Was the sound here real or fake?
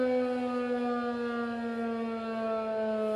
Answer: real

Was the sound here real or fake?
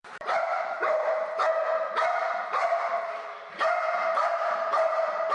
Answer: fake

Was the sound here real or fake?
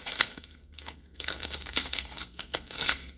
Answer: fake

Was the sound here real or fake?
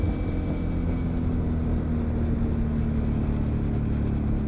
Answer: real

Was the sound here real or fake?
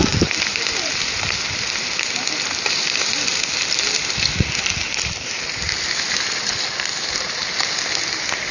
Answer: real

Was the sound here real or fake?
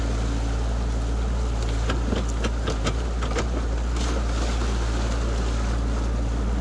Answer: real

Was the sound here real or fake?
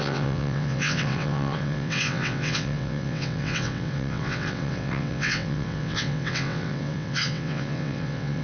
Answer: fake